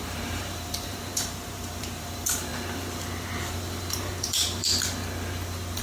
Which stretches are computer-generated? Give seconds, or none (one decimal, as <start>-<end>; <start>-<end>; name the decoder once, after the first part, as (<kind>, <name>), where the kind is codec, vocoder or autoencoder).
0.0-2.5 (vocoder, BigVGAN v2); 3.4-4.6